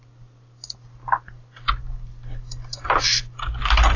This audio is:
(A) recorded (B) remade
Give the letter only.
A